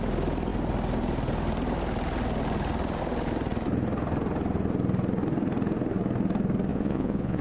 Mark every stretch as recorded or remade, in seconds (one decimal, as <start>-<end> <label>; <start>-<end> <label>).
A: 0.0-6.7 recorded; 6.7-7.4 remade